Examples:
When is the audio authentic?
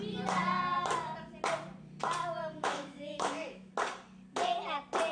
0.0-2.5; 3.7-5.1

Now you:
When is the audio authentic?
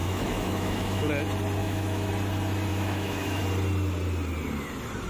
1.1-1.6; 2.1-2.7; 3.4-5.1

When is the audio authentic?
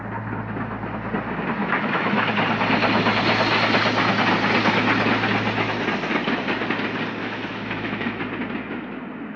0.0-1.6; 2.3-7.2; 8.2-9.4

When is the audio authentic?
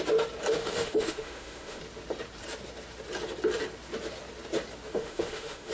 0.0-0.6; 1.8-5.0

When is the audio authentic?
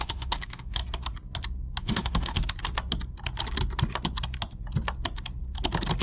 0.8-1.8; 2.4-6.0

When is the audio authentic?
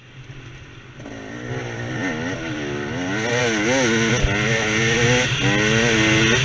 0.0-6.4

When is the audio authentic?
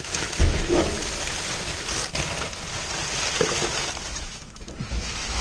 1.0-4.2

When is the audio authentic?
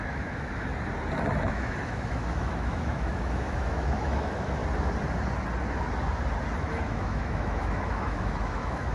0.7-1.5; 4.6-6.6